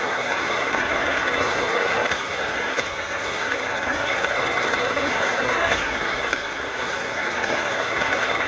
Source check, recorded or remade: remade